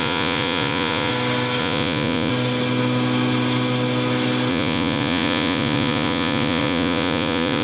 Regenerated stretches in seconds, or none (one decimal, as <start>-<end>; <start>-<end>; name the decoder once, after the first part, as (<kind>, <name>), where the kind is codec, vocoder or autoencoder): 0.0-1.1 (vocoder, Vocos); 1.6-2.3; 4.5-7.6